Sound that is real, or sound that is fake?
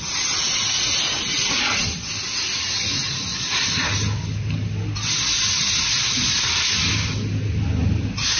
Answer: real